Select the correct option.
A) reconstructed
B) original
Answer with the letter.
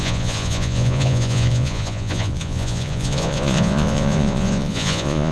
A